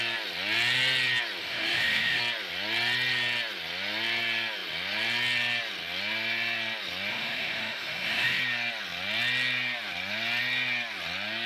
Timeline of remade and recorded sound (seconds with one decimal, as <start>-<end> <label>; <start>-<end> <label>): 0.0-1.4 recorded; 1.4-2.2 remade; 2.2-7.1 recorded; 7.1-8.4 remade; 8.4-11.5 recorded